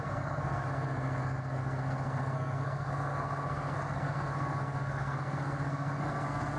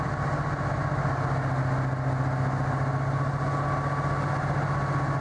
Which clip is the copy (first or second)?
first